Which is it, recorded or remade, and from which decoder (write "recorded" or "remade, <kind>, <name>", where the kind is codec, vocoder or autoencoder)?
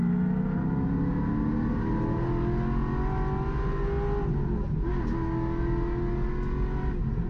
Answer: recorded